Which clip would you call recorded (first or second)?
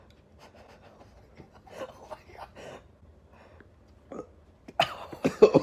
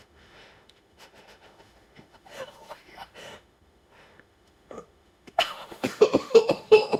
first